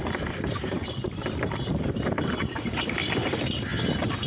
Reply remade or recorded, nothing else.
recorded